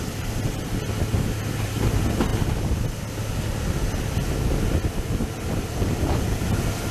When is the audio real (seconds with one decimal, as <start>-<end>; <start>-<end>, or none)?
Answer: 0.0-6.9